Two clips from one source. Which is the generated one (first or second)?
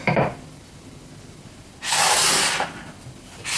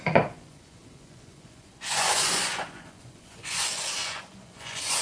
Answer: second